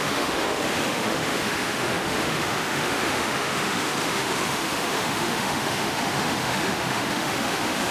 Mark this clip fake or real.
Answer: fake